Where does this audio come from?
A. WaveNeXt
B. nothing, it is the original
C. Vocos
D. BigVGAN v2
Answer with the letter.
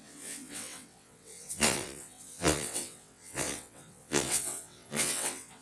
A